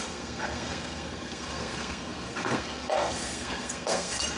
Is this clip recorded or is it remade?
remade